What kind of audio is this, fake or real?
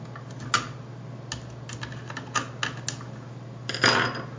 real